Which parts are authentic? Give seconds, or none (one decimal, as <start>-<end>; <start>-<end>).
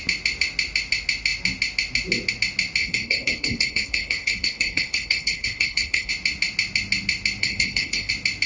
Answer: 0.0-2.8; 6.1-7.4; 8.1-8.5